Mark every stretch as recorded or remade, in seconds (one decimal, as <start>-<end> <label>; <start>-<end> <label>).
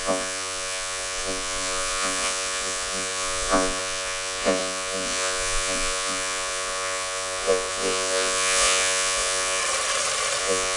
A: 0.0-9.6 remade; 9.6-10.4 recorded; 10.4-10.8 remade